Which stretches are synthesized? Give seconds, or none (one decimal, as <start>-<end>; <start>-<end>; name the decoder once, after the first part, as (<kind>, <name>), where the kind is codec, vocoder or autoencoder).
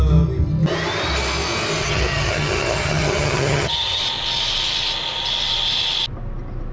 1.8-4.0 (vocoder, HiFi-GAN)